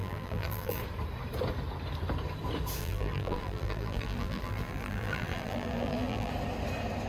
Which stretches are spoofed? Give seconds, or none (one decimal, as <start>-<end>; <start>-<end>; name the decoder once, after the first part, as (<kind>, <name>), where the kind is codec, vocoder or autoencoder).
0.0-0.8 (vocoder, BigVGAN v2); 2.8-6.3